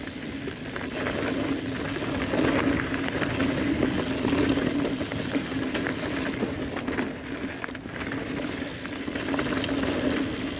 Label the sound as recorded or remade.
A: recorded